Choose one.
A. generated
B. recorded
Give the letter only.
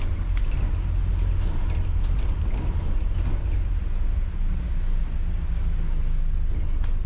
B